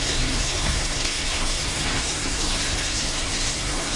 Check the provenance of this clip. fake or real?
fake